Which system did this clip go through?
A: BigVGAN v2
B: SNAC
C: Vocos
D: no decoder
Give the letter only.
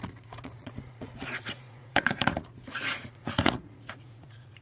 C